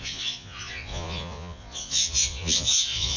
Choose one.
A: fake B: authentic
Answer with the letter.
A